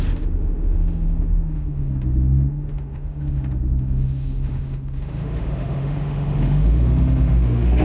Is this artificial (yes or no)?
yes